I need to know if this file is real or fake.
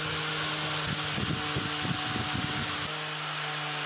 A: real